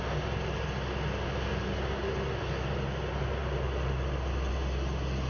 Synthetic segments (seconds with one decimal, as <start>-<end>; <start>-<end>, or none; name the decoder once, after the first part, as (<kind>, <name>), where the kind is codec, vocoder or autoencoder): none